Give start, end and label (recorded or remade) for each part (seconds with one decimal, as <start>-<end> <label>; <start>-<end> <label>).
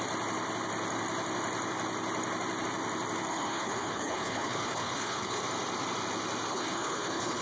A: 0.0-3.3 recorded; 3.3-5.4 remade; 5.4-6.5 recorded; 6.5-7.4 remade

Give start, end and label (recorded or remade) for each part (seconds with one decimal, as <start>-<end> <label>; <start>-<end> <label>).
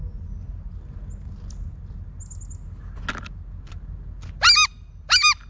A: 0.0-5.5 recorded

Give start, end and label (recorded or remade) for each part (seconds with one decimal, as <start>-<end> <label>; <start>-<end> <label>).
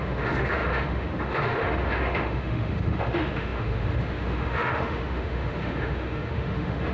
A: 0.0-6.9 remade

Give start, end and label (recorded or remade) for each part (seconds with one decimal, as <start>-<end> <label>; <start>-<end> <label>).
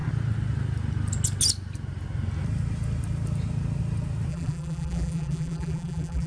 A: 0.0-4.3 recorded; 4.3-6.3 remade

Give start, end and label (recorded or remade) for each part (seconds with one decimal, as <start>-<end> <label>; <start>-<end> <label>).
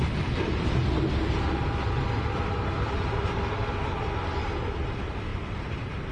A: 0.0-6.1 recorded